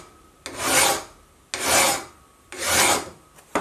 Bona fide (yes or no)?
yes